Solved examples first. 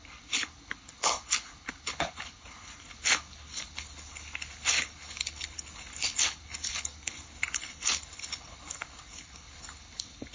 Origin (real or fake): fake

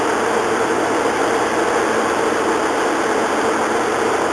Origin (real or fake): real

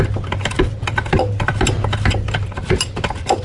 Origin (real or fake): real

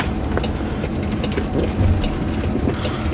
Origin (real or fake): real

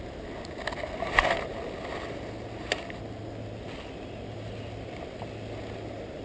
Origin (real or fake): real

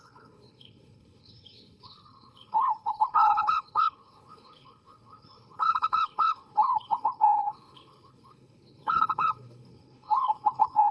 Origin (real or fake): fake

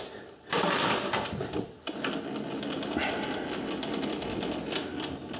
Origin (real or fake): real